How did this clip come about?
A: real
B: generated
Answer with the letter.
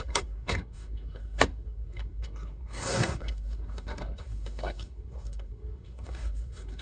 B